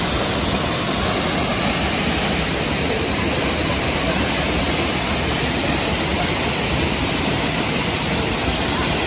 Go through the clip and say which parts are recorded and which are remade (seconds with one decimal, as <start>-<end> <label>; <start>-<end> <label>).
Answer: 0.0-6.1 recorded; 6.1-7.3 remade; 7.3-9.1 recorded